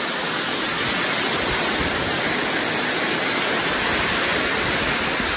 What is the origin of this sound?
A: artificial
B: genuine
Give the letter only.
B